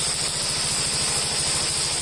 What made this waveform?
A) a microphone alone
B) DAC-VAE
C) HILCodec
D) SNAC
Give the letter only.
A